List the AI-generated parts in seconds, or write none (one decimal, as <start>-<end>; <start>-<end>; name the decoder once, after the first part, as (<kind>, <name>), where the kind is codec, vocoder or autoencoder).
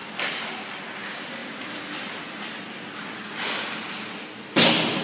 none